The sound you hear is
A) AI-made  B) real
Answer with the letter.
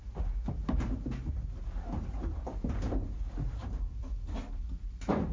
B